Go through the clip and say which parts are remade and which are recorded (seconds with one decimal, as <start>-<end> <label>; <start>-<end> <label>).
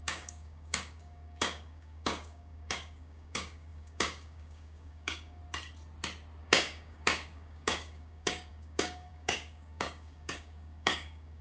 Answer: 0.0-5.4 remade; 5.4-6.4 recorded; 6.4-11.4 remade